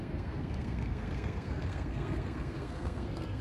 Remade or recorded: remade